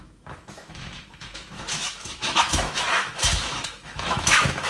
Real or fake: fake